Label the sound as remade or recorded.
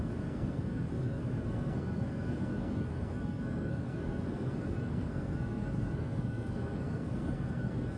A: remade